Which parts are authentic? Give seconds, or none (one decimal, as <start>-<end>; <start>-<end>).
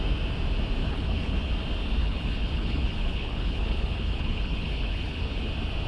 0.0-0.8; 1.5-2.0; 5.5-5.9